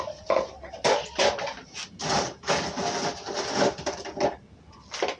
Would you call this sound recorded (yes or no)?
yes